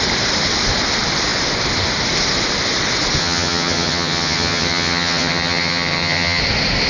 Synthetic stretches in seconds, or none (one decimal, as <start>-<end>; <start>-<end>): 3.2-6.4